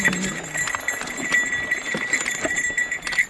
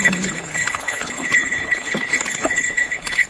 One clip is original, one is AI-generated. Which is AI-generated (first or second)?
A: second